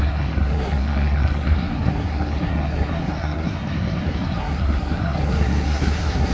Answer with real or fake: fake